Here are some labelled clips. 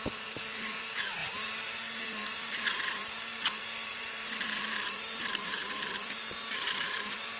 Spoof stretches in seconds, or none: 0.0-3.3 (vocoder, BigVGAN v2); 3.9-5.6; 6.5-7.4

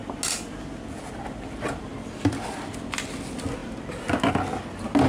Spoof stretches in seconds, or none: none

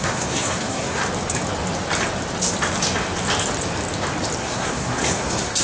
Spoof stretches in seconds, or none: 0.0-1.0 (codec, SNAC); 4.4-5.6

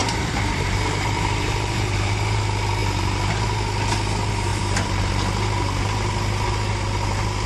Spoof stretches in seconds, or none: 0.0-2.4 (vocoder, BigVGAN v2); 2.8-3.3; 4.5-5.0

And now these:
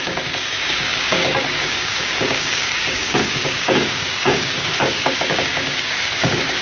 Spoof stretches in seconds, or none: 0.0-6.6 (codec, DAC)